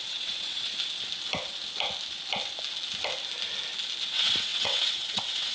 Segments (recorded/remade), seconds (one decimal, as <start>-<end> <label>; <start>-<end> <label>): 0.0-0.7 remade; 0.7-4.0 recorded; 4.0-5.5 remade